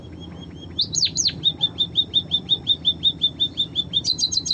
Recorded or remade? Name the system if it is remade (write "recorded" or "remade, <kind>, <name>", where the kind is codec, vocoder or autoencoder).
recorded